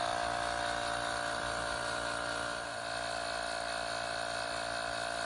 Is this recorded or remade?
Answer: recorded